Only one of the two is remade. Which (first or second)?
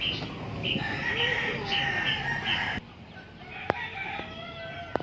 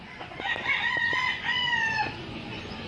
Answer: second